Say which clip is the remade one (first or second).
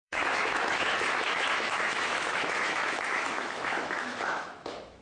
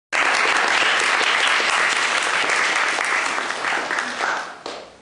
first